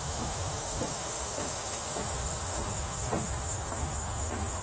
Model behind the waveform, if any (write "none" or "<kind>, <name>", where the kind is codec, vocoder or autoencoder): autoencoder, DAC-VAE